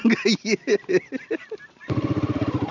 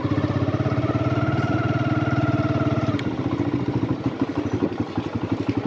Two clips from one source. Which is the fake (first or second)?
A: first